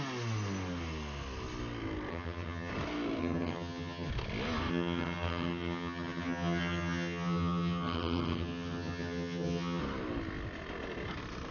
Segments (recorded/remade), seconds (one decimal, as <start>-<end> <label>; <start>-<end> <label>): 0.0-2.1 recorded; 2.1-2.7 remade; 2.7-3.2 recorded; 3.2-4.1 remade; 4.1-4.7 recorded; 4.7-9.8 remade; 9.8-11.5 recorded